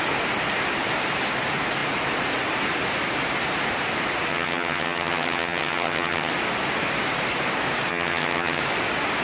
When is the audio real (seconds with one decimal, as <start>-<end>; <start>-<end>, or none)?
0.0-4.3; 6.3-7.9; 8.6-9.2